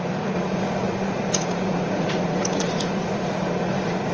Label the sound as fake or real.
fake